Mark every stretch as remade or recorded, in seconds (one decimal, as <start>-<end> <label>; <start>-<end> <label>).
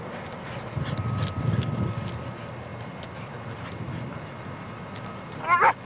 0.0-5.8 recorded